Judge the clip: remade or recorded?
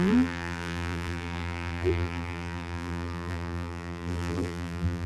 remade